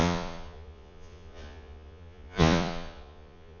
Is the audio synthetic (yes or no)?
yes